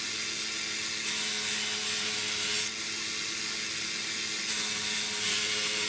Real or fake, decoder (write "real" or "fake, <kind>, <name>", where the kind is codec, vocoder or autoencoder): real